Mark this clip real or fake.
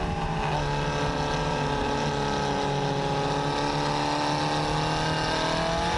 real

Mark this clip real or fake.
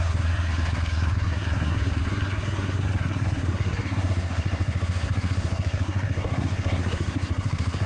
fake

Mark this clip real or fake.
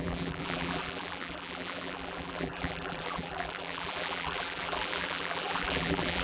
fake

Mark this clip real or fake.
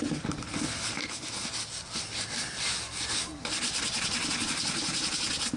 real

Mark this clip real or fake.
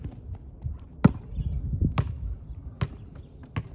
real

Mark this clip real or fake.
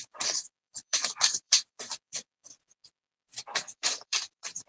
fake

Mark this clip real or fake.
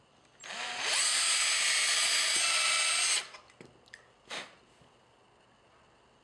real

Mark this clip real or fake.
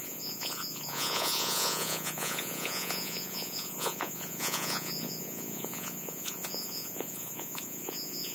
fake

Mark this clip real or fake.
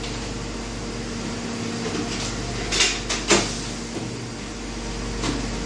real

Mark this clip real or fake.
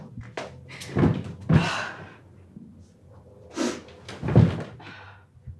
real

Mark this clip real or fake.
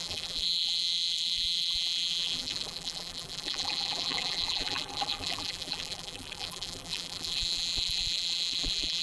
fake